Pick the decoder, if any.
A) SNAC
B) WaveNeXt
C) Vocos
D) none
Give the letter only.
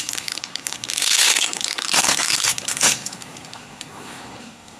A